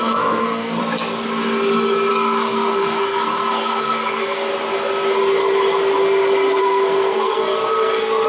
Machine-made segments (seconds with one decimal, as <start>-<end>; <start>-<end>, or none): 0.0-0.8; 2.1-4.5; 6.6-8.3